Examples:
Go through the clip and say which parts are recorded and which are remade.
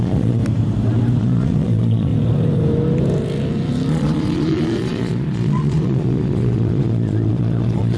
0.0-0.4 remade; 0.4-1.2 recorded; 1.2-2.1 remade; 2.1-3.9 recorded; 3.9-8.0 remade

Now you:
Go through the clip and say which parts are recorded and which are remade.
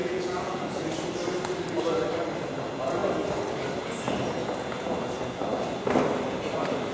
0.0-0.8 remade; 0.8-6.9 recorded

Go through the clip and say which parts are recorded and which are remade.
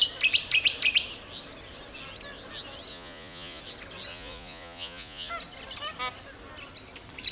0.0-2.9 recorded; 2.9-3.6 remade; 3.6-4.1 recorded; 4.1-5.3 remade; 5.3-7.3 recorded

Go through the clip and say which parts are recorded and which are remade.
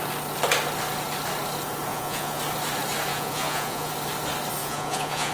0.0-1.9 recorded; 1.9-2.4 remade; 2.4-3.1 recorded; 3.1-3.9 remade; 3.9-4.6 recorded; 4.6-5.3 remade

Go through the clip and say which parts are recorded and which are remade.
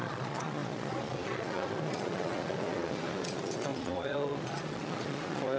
0.0-5.6 remade